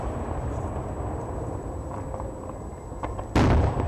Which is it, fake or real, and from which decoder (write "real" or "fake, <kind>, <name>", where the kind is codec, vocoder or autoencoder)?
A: real